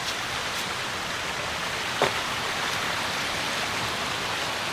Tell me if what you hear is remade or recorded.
recorded